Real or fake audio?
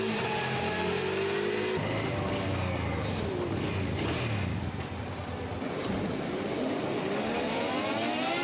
real